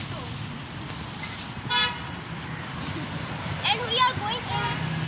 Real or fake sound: real